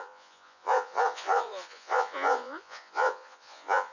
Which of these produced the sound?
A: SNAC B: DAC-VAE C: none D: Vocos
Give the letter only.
D